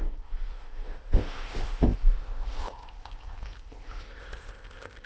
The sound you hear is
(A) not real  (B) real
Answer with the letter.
A